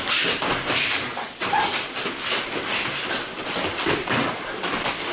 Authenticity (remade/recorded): recorded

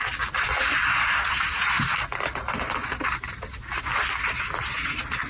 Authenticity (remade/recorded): recorded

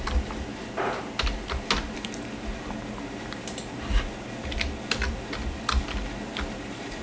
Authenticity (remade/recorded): recorded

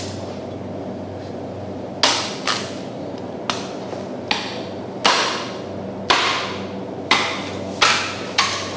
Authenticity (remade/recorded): recorded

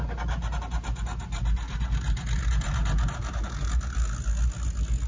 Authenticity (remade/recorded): recorded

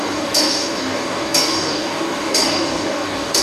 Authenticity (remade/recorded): remade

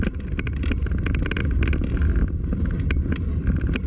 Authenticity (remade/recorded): recorded